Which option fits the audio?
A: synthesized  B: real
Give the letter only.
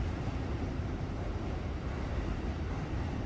A